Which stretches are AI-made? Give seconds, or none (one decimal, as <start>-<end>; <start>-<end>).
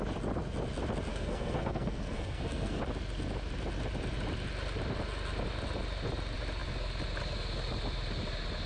1.1-2.8